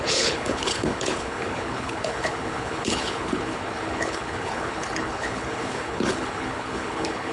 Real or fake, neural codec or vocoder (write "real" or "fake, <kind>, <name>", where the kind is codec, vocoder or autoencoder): fake, codec, HILCodec